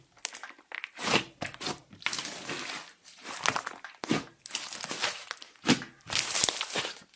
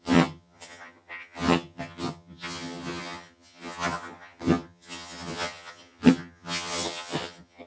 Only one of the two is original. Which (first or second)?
first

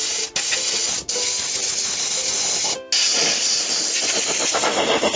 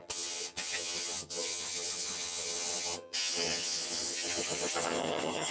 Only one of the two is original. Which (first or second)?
first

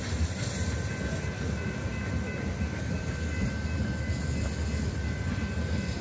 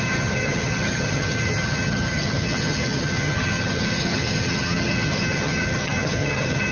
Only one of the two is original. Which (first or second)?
first